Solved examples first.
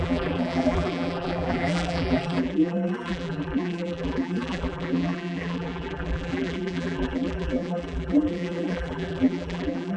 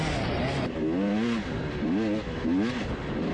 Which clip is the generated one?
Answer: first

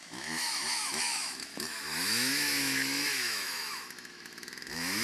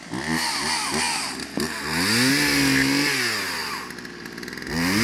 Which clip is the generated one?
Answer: first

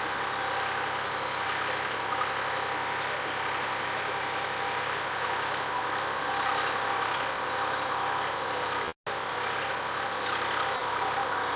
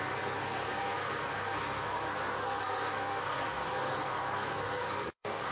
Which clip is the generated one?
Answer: second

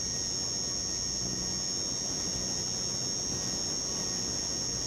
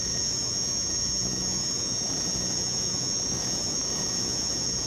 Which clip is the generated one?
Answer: second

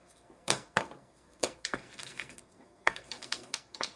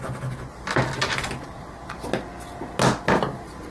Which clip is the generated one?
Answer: first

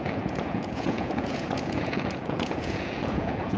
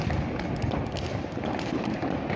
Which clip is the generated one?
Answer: first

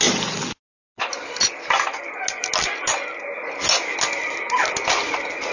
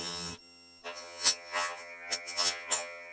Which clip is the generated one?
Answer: second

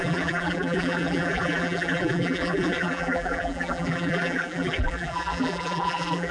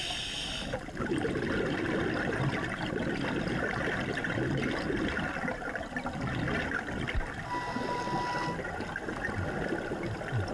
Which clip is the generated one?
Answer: first